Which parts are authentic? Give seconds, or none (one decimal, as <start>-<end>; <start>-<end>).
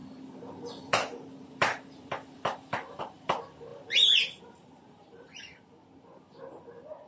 3.0-3.7; 5.4-7.1